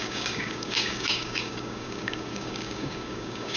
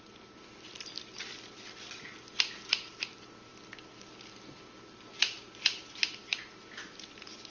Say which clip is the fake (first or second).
first